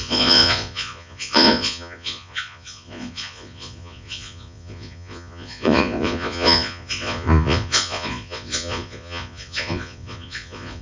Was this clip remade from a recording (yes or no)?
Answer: yes